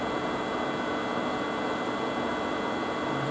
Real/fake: real